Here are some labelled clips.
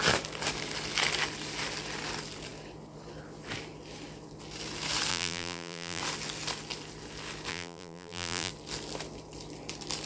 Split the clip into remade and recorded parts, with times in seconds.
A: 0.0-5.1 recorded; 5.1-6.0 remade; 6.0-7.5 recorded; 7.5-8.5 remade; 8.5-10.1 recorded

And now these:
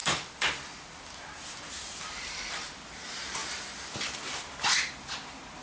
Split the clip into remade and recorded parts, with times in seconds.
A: 0.0-1.6 remade; 1.6-3.4 recorded; 3.4-3.9 remade; 3.9-5.6 recorded

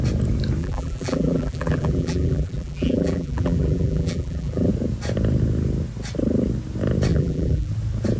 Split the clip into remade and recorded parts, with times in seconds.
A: 0.0-0.6 recorded; 0.6-4.7 remade; 4.7-7.1 recorded; 7.1-7.7 remade; 7.7-8.2 recorded

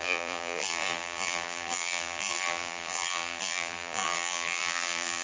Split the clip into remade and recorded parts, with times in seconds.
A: 0.0-5.2 remade

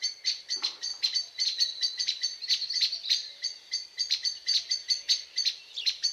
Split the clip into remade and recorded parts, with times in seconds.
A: 0.0-0.9 remade; 0.9-1.9 recorded; 1.9-2.4 remade; 2.4-3.1 recorded; 3.1-4.5 remade; 4.5-5.6 recorded; 5.6-6.1 remade

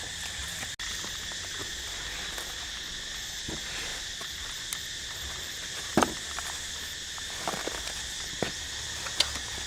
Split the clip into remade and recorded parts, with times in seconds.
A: 0.0-3.9 recorded; 3.9-6.2 remade; 6.2-9.7 recorded